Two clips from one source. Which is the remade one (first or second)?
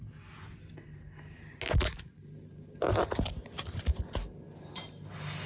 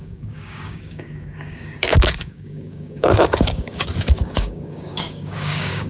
second